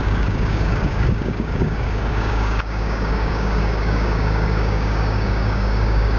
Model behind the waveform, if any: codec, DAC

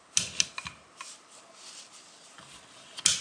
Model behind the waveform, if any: none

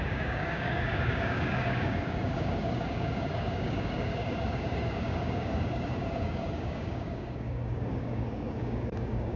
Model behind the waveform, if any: codec, DAC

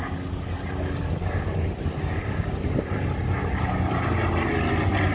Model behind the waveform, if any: none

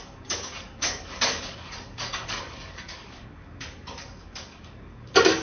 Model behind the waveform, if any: codec, DAC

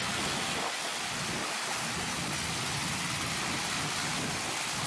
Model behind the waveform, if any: none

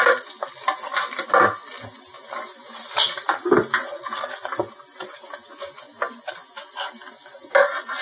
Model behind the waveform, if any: none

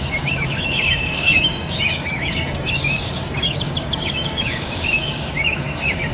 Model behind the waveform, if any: codec, DAC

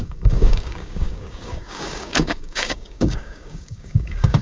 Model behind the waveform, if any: codec, DAC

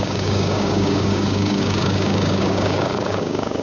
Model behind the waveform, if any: codec, DAC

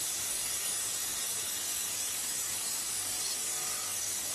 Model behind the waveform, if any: codec, DAC